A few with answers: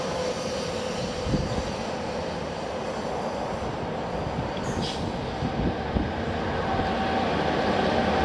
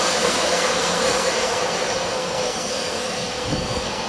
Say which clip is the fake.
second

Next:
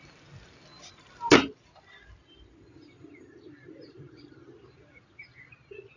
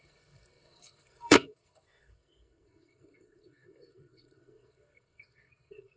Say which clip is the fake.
second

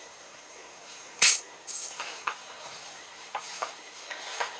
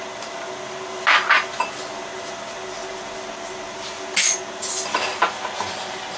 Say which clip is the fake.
first